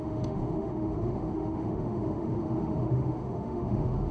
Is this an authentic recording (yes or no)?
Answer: no